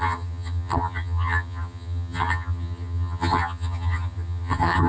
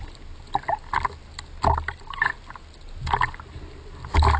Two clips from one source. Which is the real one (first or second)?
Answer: second